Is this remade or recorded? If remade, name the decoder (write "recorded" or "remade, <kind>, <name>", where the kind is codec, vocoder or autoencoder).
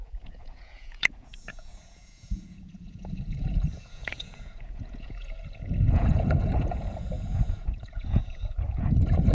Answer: remade, vocoder, Vocos